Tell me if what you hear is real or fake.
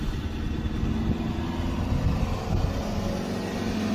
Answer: real